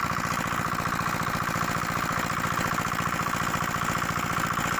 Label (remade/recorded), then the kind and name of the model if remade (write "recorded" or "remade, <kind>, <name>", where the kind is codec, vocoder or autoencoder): recorded